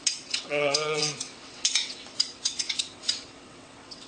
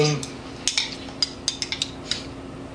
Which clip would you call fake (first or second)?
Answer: first